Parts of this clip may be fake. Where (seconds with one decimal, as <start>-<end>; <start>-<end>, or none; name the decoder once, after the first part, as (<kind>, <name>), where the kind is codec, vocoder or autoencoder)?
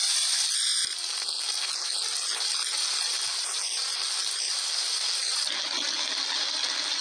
none